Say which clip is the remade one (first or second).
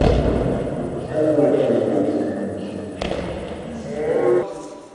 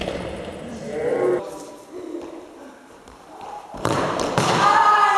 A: second